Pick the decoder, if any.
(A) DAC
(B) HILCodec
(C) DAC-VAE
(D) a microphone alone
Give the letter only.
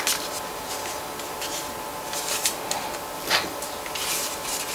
D